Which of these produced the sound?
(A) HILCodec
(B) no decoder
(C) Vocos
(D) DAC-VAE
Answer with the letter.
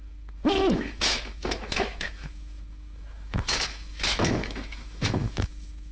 D